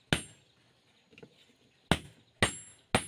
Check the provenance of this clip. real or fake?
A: real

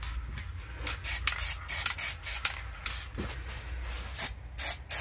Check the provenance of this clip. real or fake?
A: real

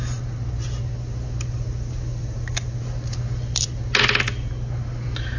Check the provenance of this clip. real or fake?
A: real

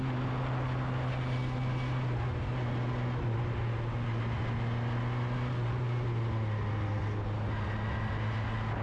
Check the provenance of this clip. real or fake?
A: real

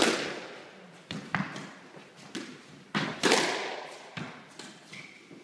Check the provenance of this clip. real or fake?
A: real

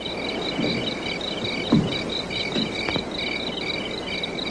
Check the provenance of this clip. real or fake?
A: real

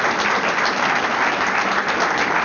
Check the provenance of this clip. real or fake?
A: real